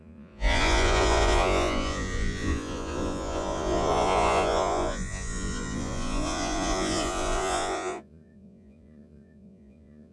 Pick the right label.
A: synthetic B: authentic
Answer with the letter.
A